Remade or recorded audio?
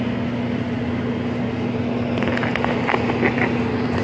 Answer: recorded